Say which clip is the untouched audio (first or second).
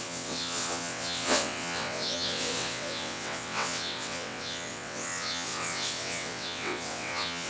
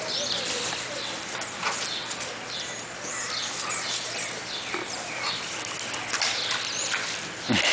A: second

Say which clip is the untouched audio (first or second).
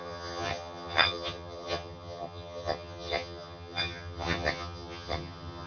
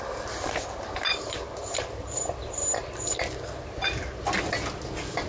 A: second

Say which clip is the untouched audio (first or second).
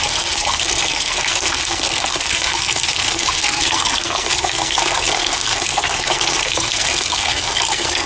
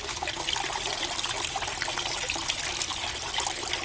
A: second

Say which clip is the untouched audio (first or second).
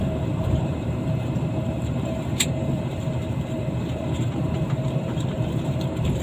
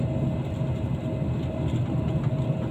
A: second